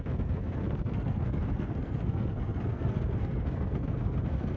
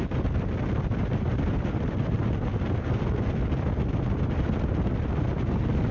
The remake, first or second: first